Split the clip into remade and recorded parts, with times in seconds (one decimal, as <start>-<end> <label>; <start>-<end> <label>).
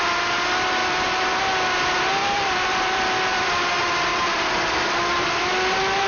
0.0-0.8 recorded; 0.8-1.4 remade; 1.4-2.2 recorded; 2.2-3.5 remade; 3.5-4.1 recorded; 4.1-5.4 remade; 5.4-6.1 recorded